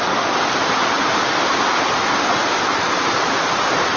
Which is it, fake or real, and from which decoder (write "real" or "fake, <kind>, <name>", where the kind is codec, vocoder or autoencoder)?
real